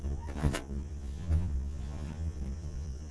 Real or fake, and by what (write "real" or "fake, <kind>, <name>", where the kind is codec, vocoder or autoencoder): fake, vocoder, Vocos